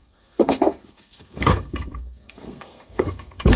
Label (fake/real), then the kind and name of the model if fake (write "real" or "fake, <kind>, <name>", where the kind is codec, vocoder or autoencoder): fake, codec, SNAC